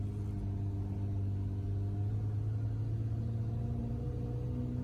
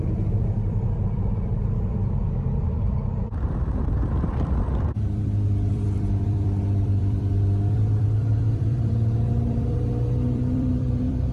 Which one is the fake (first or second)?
second